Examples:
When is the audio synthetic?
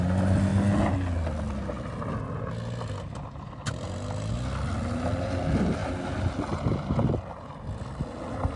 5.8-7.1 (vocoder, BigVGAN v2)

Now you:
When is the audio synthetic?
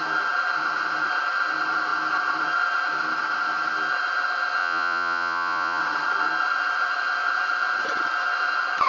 4.6-5.8 (vocoder, Vocos)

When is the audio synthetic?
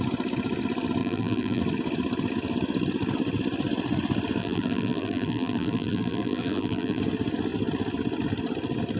1.0-1.6 (vocoder, BigVGAN v2); 4.4-7.0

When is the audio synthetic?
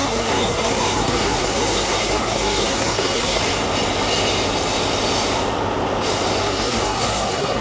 0.0-3.4 (codec, SNAC); 6.4-7.6